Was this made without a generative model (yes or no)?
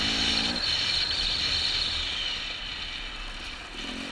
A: yes